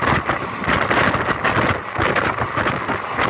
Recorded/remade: recorded